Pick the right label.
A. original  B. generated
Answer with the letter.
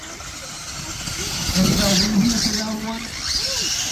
A